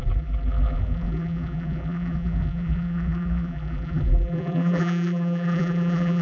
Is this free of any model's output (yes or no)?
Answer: no